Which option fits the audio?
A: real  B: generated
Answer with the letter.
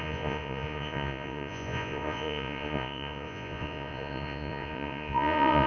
B